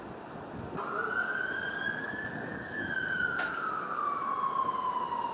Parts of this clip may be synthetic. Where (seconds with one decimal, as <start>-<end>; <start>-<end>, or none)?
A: 1.2-4.0